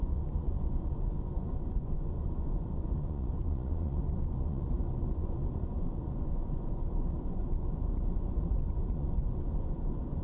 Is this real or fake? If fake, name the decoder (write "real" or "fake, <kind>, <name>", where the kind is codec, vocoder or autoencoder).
fake, vocoder, Vocos